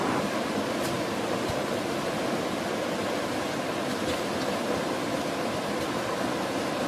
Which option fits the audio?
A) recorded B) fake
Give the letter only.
A